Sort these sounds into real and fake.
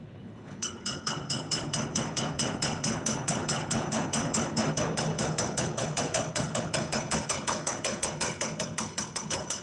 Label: fake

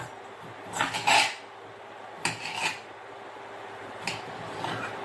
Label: real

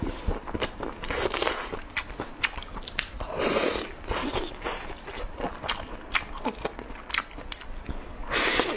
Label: real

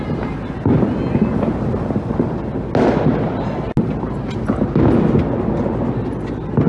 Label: real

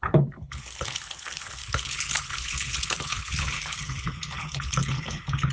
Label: fake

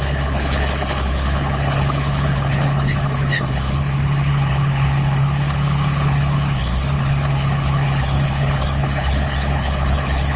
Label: fake